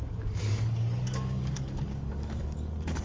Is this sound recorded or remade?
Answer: remade